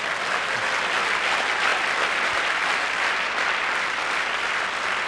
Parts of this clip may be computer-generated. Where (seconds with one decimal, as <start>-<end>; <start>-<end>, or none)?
none